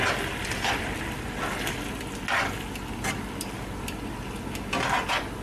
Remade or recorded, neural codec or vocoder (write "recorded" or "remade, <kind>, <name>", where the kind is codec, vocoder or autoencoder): recorded